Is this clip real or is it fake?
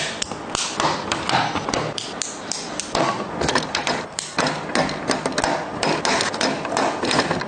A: real